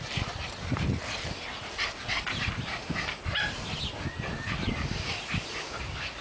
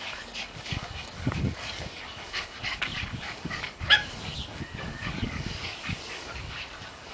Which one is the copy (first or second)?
second